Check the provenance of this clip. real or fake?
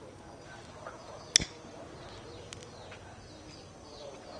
real